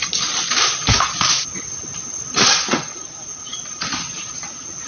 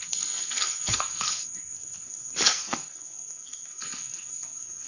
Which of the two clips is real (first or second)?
first